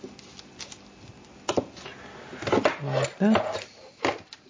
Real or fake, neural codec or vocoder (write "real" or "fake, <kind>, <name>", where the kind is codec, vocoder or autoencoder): real